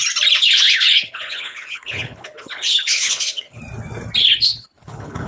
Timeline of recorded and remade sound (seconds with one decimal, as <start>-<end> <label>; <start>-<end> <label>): 0.0-0.4 recorded; 0.4-3.6 remade; 3.6-4.2 recorded; 4.2-5.3 remade